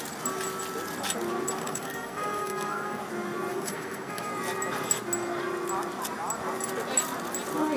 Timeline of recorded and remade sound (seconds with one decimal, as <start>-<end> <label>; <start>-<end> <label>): 0.0-1.6 recorded; 1.6-3.0 remade; 3.0-3.5 recorded; 3.5-4.3 remade; 4.3-7.8 recorded